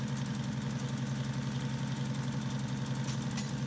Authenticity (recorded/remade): recorded